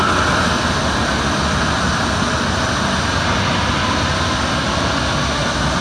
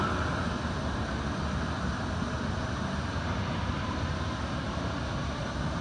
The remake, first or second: second